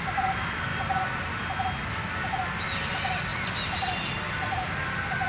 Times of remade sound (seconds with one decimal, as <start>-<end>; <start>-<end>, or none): none